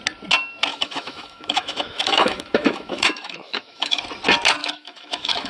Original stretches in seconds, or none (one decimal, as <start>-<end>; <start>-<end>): 0.0-0.7; 4.0-4.6